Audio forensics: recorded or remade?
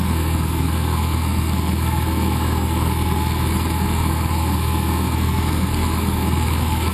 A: remade